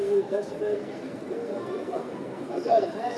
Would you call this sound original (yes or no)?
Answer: no